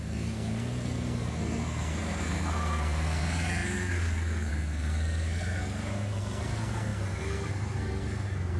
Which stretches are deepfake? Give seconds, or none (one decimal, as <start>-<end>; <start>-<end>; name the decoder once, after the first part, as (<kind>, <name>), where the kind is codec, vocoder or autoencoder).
0.0-8.6 (codec, SNAC)